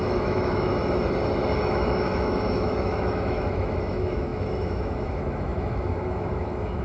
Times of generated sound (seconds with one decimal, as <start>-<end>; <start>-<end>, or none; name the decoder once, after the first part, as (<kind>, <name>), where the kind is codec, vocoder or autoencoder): 0.0-0.7 (autoencoder, DAC-VAE); 1.6-6.8